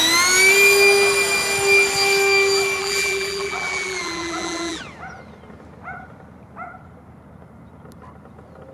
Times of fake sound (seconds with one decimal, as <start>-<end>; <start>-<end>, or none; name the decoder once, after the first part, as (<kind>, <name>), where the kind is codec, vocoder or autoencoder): 2.8-4.8 (vocoder, BigVGAN v2)